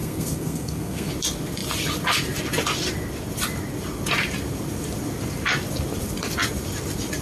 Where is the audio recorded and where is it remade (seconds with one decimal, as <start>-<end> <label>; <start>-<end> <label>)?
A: 0.0-1.1 remade; 1.1-7.2 recorded